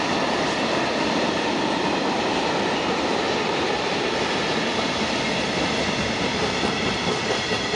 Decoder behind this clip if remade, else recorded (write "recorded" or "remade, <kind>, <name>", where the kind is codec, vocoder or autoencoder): remade, vocoder, BigVGAN v2